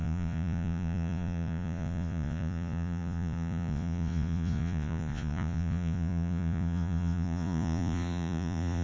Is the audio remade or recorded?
remade